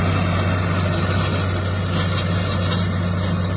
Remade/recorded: recorded